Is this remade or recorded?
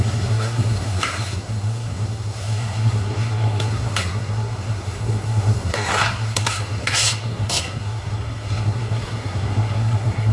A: remade